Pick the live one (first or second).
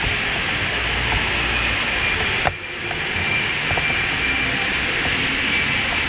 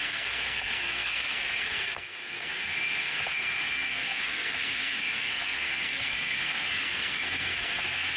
first